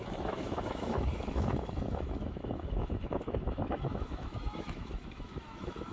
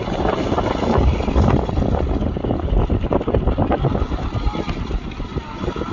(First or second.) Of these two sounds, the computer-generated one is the first